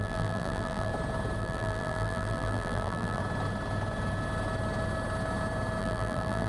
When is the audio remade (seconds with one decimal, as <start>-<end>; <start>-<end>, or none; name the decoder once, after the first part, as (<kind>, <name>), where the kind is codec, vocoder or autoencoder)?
0.0-0.9 (vocoder, BigVGAN v2); 1.4-3.2; 5.8-6.5